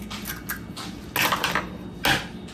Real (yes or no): yes